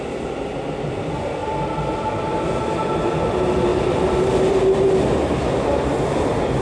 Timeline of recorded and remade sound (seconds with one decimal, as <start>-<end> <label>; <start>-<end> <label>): 0.0-6.6 recorded

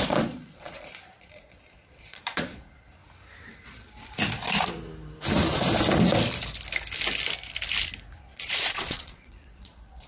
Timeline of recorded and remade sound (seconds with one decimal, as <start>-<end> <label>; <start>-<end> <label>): 0.0-3.0 remade; 3.0-8.2 recorded; 8.2-10.1 remade

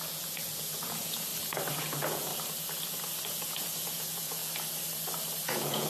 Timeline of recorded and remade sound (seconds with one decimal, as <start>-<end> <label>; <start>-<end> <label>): 0.0-1.3 remade; 1.3-1.8 recorded; 1.8-2.3 remade; 2.3-3.3 recorded; 3.3-4.4 remade; 4.4-5.4 recorded; 5.4-5.9 remade

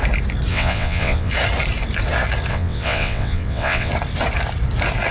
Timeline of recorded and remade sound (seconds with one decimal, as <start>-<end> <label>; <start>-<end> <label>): 0.0-0.5 recorded; 0.5-1.3 remade; 1.3-2.5 recorded; 2.5-3.9 remade; 3.9-5.1 recorded

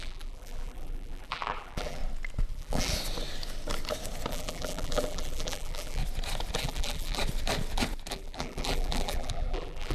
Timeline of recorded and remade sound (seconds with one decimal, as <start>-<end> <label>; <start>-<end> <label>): 0.0-2.0 remade; 2.0-2.5 recorded; 2.5-2.9 remade; 2.9-4.3 recorded; 4.3-6.0 remade; 6.0-6.6 recorded; 6.6-7.2 remade; 7.2-8.1 recorded; 8.1-9.9 remade

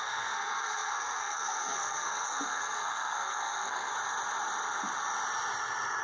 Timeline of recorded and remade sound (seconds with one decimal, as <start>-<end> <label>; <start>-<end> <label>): 0.0-3.9 remade; 3.9-6.0 recorded

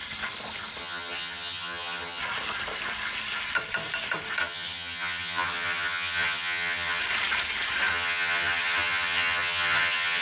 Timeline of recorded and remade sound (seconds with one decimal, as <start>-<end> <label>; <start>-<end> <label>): 0.0-0.8 recorded; 0.8-2.2 remade; 2.2-4.4 recorded; 4.4-7.0 remade; 7.0-7.9 recorded; 7.9-10.2 remade

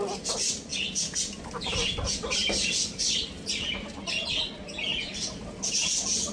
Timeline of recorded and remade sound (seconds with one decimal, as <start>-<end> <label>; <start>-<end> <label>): 0.0-6.3 recorded